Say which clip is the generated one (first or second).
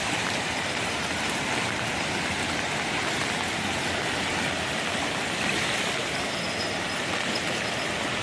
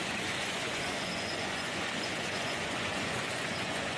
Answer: second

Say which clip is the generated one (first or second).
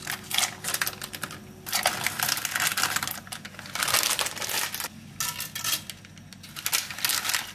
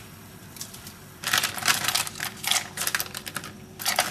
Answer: second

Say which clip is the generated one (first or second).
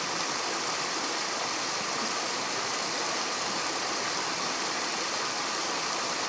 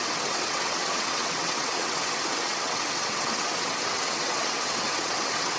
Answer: second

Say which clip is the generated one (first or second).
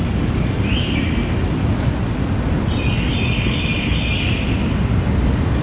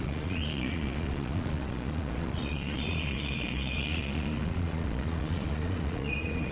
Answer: second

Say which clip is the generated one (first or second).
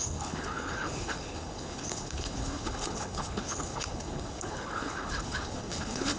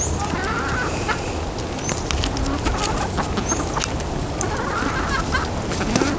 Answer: first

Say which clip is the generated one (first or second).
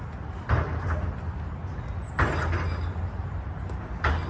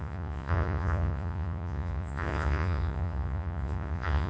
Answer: second